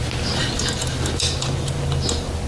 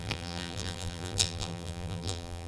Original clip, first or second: first